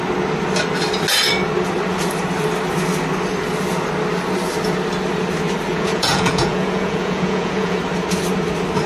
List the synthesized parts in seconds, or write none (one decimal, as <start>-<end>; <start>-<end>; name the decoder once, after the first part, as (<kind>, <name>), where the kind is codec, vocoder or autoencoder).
5.7-7.8 (vocoder, Vocos)